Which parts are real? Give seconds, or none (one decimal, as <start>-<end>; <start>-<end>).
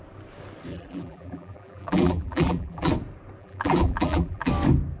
0.0-0.7; 2.9-3.4; 4.5-5.0